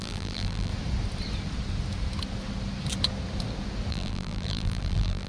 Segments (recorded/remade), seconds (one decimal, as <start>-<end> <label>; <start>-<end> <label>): 0.0-0.7 remade; 0.7-3.9 recorded; 3.9-5.3 remade